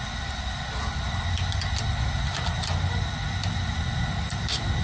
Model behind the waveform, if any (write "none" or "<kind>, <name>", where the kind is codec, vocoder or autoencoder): none